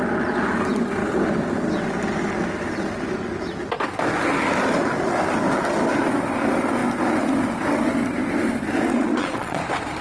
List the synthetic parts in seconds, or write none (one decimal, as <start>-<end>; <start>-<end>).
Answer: 8.9-9.6